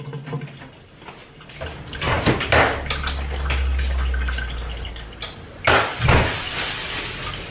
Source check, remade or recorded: recorded